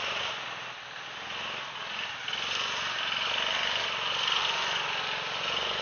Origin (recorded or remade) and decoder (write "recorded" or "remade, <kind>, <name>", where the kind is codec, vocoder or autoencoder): recorded